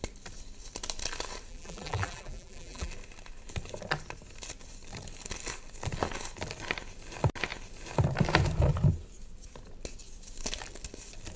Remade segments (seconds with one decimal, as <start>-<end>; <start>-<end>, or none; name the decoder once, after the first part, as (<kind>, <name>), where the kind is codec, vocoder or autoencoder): 1.5-2.9 (vocoder, BigVGAN v2)